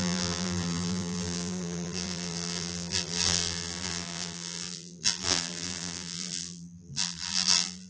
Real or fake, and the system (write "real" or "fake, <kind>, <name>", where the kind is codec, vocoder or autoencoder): fake, vocoder, BigVGAN v2